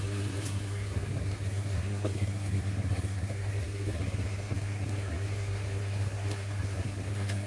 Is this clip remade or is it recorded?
remade